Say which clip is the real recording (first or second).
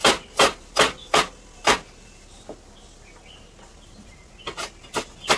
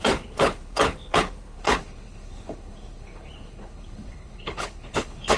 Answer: first